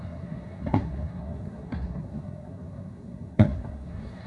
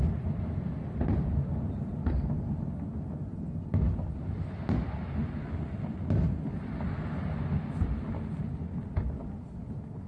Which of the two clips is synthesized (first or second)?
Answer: first